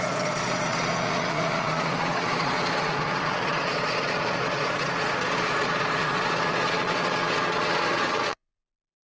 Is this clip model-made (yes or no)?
yes